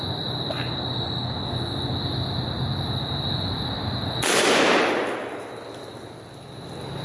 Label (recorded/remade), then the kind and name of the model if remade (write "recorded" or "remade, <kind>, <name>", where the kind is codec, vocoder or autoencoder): recorded